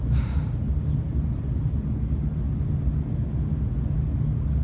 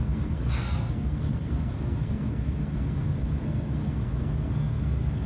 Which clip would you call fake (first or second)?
second